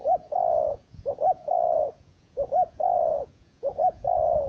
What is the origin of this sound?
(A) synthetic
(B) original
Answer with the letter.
A